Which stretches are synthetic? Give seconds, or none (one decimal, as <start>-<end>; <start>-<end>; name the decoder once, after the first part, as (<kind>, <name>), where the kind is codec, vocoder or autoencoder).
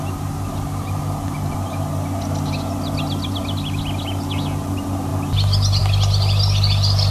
none